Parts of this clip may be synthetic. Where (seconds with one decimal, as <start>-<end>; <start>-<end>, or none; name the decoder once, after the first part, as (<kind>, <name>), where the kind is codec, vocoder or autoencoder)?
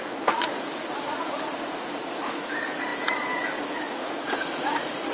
0.0-5.1 (vocoder, Vocos)